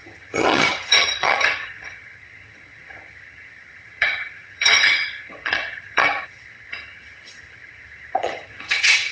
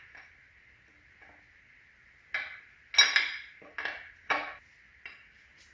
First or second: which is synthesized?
first